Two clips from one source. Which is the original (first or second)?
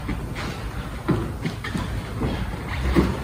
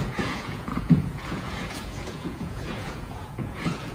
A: first